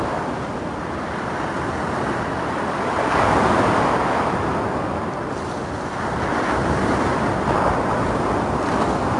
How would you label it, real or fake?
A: real